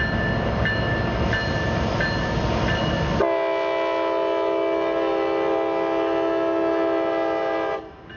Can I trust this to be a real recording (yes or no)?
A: yes